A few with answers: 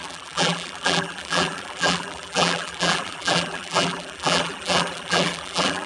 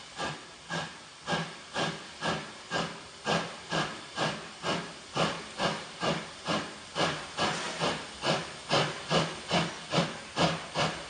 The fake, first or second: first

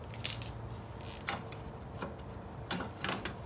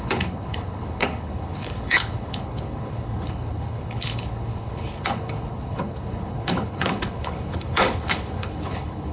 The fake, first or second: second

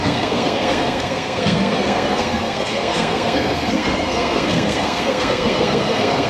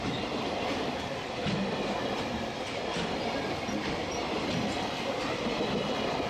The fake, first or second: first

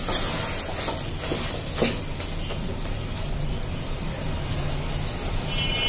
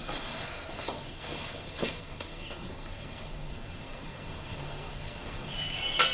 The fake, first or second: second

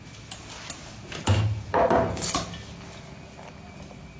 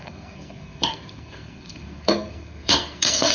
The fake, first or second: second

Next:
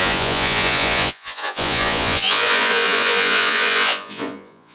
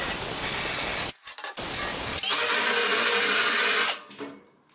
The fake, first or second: first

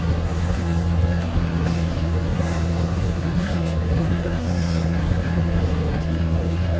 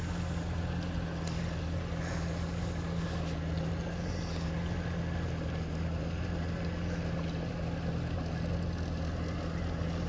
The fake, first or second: first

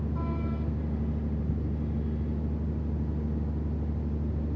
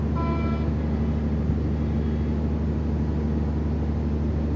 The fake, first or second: first